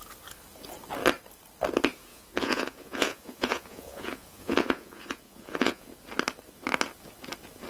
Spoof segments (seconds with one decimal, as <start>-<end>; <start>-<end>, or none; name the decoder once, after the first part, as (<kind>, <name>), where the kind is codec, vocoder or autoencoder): 2.1-5.9 (vocoder, Vocos)